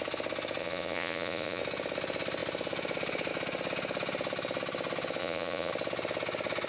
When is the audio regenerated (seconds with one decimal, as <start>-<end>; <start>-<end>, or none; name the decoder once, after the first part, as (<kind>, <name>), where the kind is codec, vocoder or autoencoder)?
0.6-1.6 (vocoder, Vocos); 5.2-5.7